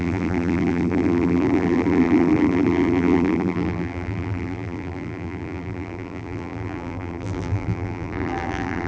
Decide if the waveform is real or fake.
fake